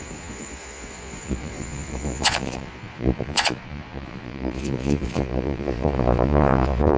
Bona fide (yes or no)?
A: no